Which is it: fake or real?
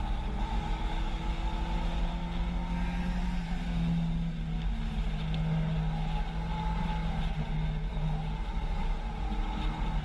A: real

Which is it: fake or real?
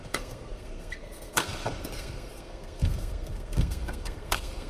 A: fake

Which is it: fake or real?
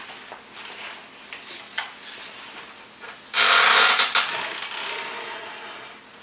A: real